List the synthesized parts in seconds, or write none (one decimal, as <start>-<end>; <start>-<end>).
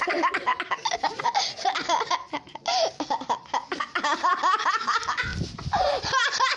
0.5-1.2; 2.7-4.3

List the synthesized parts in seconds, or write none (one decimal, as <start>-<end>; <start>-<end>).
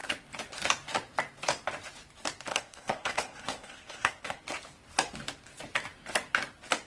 2.5-4.4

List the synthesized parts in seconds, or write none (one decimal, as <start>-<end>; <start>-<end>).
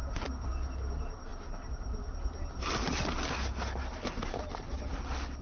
none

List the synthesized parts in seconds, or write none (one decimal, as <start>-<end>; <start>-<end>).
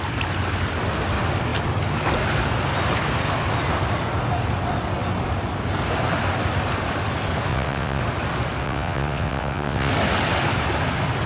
7.5-8.0; 8.6-9.9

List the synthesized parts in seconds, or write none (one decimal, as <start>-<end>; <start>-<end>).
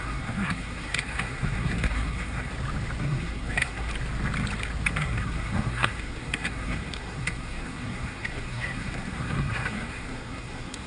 0.0-2.5; 3.0-3.9; 4.9-10.9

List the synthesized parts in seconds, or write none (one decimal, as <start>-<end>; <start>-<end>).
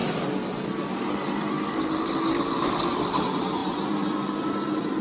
none